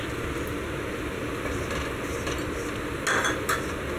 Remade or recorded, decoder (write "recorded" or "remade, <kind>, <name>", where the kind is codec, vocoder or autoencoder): recorded